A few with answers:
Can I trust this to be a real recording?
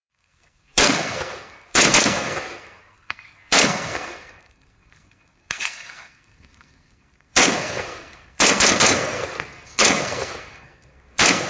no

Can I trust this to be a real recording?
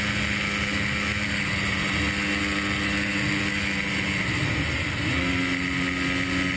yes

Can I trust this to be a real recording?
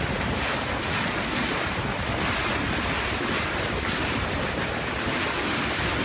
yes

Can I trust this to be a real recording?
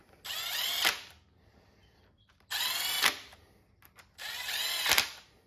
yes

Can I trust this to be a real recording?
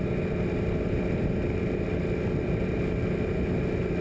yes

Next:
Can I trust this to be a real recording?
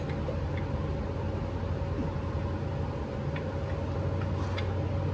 yes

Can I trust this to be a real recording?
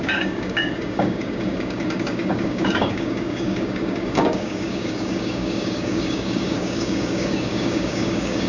no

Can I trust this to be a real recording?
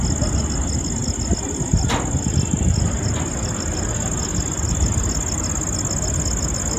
yes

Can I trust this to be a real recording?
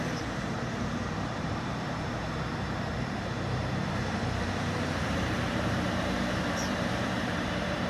no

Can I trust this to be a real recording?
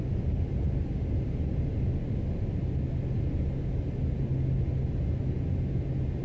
yes